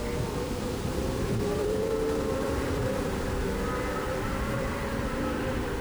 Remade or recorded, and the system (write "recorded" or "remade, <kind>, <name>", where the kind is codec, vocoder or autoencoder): remade, vocoder, BigVGAN v2